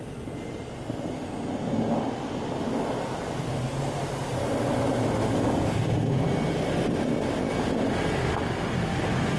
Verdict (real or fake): real